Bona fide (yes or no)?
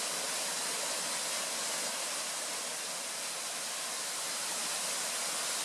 yes